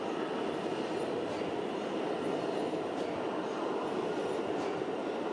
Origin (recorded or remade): recorded